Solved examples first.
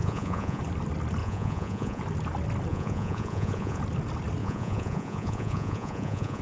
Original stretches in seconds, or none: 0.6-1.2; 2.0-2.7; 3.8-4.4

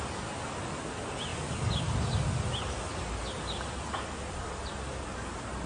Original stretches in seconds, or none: 0.0-5.7

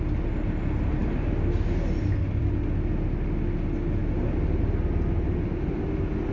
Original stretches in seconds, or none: 0.0-6.3

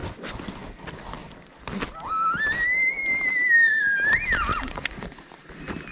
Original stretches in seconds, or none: 0.0-4.5; 5.5-5.9

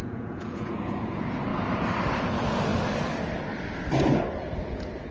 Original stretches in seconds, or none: 1.5-2.2; 2.7-4.6

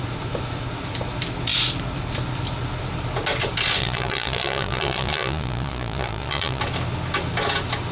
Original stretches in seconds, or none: 0.0-3.8; 6.6-7.9